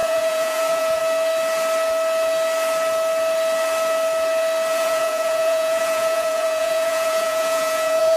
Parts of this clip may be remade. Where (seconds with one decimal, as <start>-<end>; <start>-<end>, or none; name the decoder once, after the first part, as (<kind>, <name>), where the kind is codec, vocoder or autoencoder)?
0.0-1.0 (vocoder, Vocos); 4.7-8.2